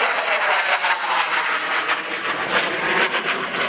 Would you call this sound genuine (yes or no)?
yes